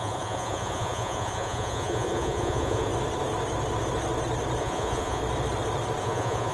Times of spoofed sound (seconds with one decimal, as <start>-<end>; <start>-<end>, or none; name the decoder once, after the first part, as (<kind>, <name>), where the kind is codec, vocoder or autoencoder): 0.0-2.9 (vocoder, Vocos); 4.6-5.2; 6.0-6.5